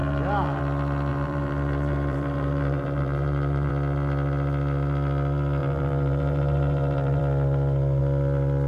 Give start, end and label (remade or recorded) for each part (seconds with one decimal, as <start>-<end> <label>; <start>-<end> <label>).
0.0-0.6 remade; 0.6-1.1 recorded; 1.1-3.7 remade; 3.7-5.6 recorded; 5.6-7.2 remade; 7.2-8.7 recorded